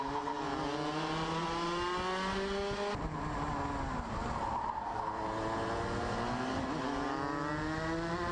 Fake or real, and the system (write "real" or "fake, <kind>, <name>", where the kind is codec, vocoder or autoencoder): real